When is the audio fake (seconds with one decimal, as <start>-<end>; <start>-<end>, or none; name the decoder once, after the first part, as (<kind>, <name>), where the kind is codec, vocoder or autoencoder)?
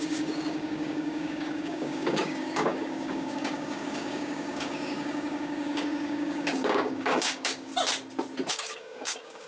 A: 0.0-7.7 (codec, DAC); 8.5-9.5